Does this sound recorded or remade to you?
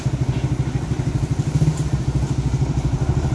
recorded